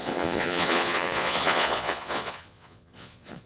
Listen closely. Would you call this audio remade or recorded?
remade